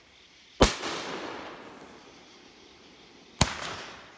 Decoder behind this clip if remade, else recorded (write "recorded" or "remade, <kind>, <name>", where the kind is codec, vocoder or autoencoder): recorded